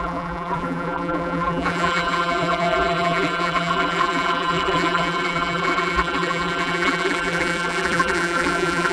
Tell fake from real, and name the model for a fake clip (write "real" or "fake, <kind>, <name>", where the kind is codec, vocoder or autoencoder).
fake, vocoder, BigVGAN v2